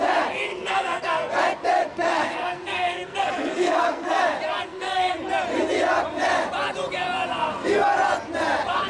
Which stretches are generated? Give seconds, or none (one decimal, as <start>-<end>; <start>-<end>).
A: 0.5-1.4; 1.9-4.2; 4.7-5.2